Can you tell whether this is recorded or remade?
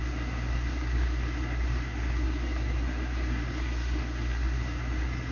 remade